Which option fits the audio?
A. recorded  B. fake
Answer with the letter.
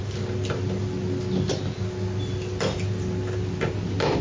A